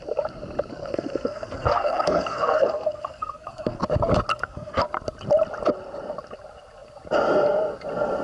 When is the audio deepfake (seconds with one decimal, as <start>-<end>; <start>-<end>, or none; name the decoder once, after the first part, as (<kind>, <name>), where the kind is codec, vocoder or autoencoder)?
0.7-3.8 (codec, SNAC); 4.3-4.8